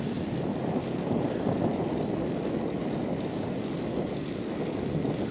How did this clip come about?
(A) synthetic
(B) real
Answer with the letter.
B